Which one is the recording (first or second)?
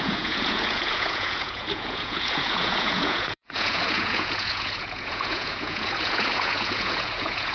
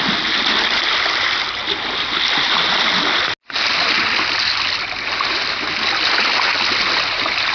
second